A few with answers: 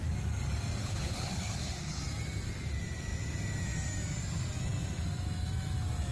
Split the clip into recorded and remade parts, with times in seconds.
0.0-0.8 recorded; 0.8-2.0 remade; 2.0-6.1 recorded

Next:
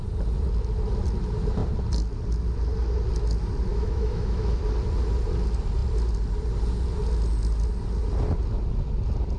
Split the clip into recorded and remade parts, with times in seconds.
0.0-3.7 recorded; 3.7-4.6 remade; 4.6-9.4 recorded

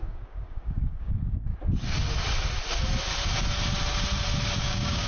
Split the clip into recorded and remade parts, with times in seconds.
0.0-1.5 remade; 1.5-4.6 recorded; 4.6-5.1 remade

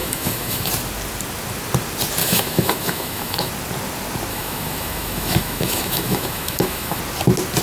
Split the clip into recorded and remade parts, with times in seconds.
0.0-0.7 remade; 0.7-2.2 recorded; 2.2-3.5 remade; 3.5-4.3 recorded; 4.3-7.0 remade; 7.0-7.6 recorded